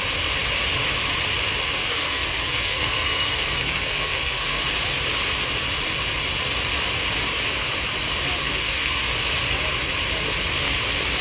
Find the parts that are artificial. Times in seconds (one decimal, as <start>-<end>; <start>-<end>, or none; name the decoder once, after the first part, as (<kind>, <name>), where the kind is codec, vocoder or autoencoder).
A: 1.8-4.6 (codec, SNAC); 8.4-9.0